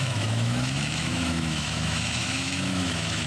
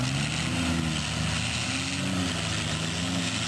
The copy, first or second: first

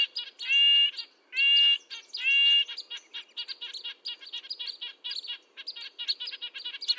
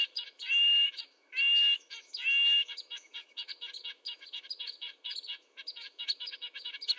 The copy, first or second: second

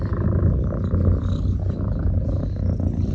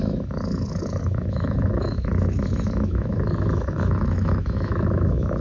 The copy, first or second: second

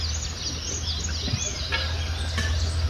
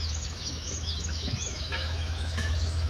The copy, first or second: second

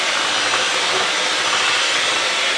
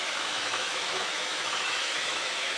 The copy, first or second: second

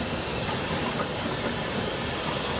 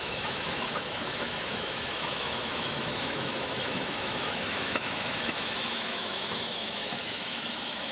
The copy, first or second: second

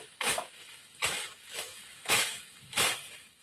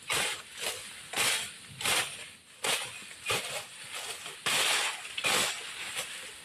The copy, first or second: first